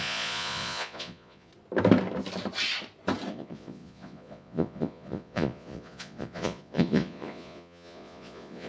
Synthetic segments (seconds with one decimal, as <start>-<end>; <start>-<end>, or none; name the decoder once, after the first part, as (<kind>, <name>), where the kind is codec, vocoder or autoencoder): 0.0-1.5 (vocoder, Vocos); 3.3-8.7